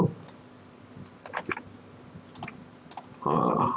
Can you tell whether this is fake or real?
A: real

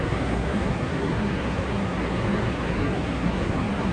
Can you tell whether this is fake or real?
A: fake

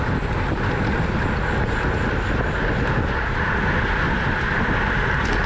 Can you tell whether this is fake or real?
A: real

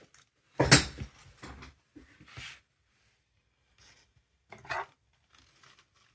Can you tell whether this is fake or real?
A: real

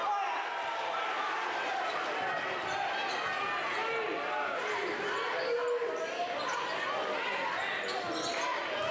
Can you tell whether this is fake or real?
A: real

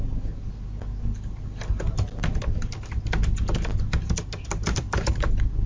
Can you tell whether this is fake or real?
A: real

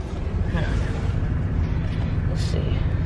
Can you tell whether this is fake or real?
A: real